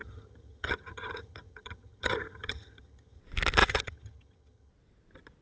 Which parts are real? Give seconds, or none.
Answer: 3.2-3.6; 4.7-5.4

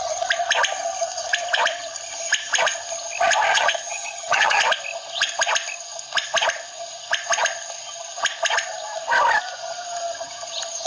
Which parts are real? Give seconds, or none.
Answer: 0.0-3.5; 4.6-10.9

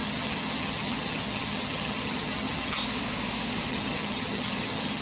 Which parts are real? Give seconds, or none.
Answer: 2.8-3.7

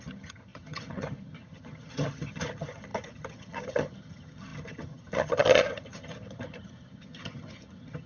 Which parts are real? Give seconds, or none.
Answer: none